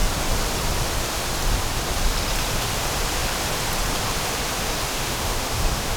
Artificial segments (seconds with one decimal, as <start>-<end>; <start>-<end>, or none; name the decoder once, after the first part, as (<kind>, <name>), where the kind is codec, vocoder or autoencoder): 4.9-6.0 (autoencoder, DAC-VAE)